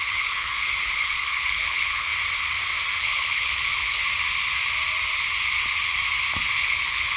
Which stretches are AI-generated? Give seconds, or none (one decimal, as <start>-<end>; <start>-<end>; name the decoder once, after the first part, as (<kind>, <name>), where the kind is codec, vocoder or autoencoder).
0.0-2.1 (codec, HILCodec); 3.0-4.0; 6.6-7.2